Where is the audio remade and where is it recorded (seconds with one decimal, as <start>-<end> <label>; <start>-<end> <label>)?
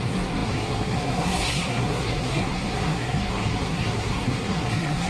0.0-5.1 remade